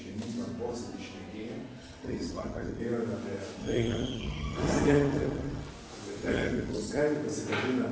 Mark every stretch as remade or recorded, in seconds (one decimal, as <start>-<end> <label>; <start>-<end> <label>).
0.0-1.8 recorded; 1.8-2.8 remade; 2.8-3.6 recorded; 3.6-5.7 remade; 5.7-6.2 recorded; 6.2-7.0 remade; 7.0-7.9 recorded